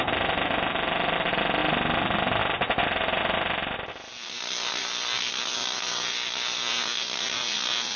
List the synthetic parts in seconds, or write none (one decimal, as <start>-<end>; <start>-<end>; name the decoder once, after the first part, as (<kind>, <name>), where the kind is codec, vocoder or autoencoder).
none